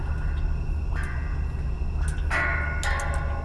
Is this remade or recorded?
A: recorded